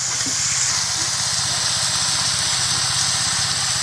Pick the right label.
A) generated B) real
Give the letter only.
B